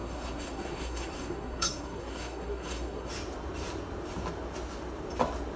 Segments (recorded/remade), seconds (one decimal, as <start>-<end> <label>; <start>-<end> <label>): 0.0-3.1 remade; 3.1-5.6 recorded